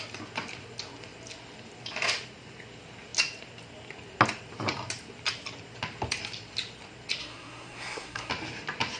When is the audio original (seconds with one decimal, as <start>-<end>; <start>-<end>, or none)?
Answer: 0.0-7.2; 8.3-9.0